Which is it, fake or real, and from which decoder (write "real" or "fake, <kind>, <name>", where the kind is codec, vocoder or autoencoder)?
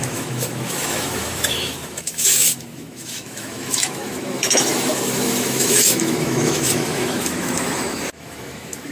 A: fake, autoencoder, DAC-VAE